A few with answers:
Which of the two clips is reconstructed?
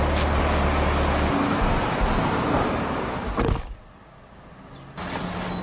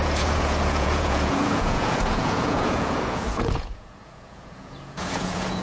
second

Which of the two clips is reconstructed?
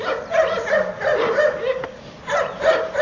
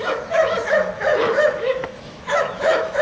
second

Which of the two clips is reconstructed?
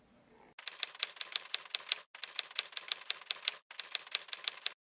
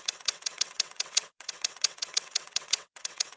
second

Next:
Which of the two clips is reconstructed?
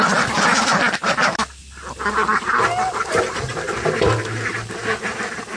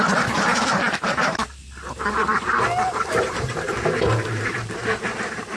second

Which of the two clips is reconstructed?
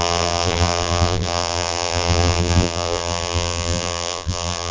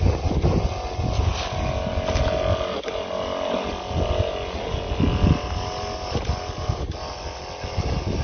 first